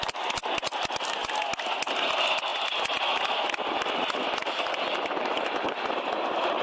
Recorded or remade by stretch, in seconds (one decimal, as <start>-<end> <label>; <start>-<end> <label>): 0.0-6.6 recorded